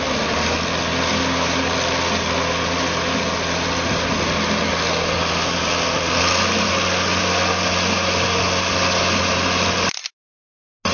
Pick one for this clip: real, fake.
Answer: real